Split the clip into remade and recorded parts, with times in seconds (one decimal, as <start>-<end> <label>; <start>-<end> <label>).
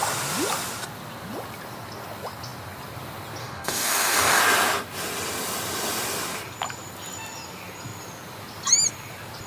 0.0-3.4 recorded; 3.4-4.4 remade; 4.4-9.5 recorded